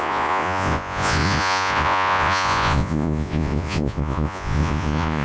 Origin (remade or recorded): remade